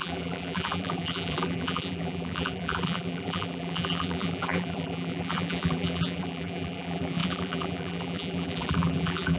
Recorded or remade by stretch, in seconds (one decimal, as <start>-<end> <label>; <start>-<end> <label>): 0.0-9.4 remade